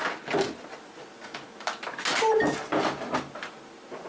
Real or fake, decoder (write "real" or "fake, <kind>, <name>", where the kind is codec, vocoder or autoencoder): real